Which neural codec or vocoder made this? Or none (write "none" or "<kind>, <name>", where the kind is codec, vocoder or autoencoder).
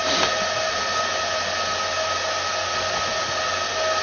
none